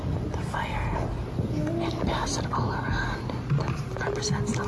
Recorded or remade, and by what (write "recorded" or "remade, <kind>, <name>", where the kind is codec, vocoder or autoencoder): recorded